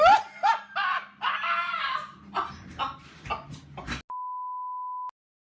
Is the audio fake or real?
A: real